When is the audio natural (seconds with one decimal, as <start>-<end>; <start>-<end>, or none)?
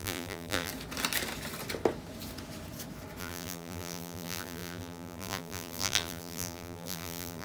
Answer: 0.7-3.2